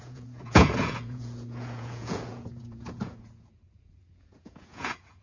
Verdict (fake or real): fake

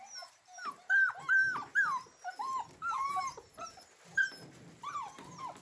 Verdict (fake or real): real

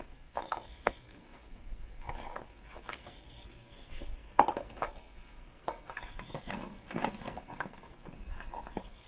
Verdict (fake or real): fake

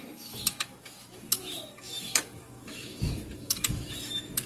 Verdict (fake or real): fake